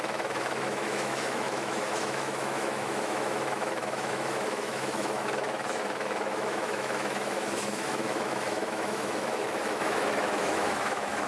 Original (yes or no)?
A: no